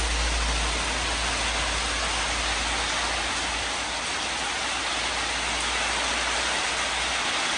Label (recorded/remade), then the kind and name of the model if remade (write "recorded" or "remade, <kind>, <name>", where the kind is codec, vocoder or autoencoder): recorded